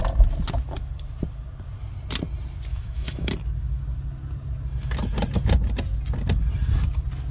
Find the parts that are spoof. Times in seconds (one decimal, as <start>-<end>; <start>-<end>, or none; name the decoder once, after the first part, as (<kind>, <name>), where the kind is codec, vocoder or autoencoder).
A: 2.7-3.3 (autoencoder, DAC-VAE)